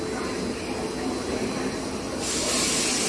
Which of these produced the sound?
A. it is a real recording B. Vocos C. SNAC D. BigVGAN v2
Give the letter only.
A